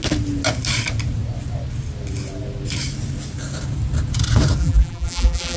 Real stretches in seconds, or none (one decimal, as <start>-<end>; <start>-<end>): 0.0-4.6